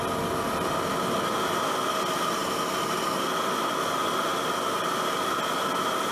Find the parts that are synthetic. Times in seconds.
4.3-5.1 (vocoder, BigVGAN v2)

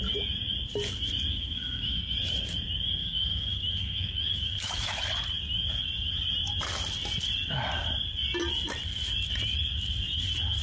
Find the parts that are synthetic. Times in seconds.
1.3-2.0 (autoencoder, DAC-VAE); 3.0-4.9

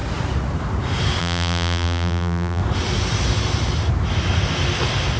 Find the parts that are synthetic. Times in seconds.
1.2-2.6 (vocoder, BigVGAN v2)